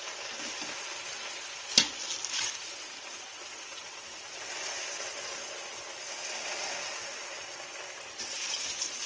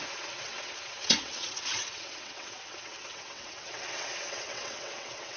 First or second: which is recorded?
first